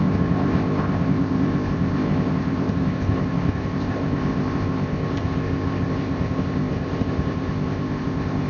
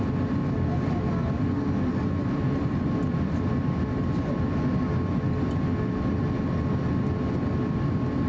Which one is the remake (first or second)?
first